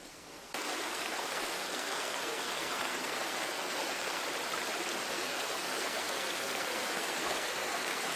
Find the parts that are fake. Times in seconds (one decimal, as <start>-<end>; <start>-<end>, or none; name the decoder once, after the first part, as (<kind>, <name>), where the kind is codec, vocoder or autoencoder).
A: 0.0-4.2 (codec, SNAC); 5.1-8.2

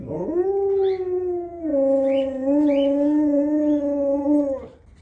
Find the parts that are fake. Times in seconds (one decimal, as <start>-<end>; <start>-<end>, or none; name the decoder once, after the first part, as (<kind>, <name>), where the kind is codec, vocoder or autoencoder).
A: none

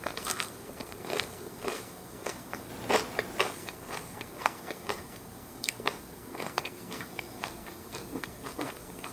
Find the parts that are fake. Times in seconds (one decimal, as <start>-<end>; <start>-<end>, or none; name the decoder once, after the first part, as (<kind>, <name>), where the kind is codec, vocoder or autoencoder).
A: 0.0-2.7 (codec, SNAC); 3.4-9.1

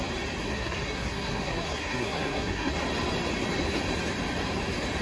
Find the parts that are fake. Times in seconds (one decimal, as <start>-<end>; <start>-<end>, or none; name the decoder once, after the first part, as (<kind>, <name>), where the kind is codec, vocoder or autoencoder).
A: 0.4-2.7 (codec, SNAC)

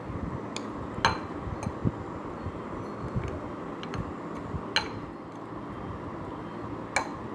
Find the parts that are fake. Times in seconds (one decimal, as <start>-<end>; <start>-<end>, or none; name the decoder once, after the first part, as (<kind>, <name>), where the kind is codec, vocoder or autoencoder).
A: none

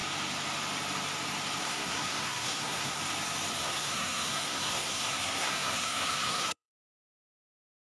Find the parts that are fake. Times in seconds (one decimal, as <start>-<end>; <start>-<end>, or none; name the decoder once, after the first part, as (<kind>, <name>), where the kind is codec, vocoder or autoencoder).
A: 1.6-3.0 (codec, SNAC); 3.6-7.8

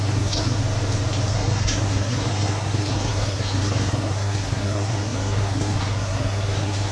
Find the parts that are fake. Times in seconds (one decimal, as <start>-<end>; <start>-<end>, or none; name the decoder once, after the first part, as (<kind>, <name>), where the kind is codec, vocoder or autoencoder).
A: 0.0-0.6 (codec, SNAC); 1.3-6.9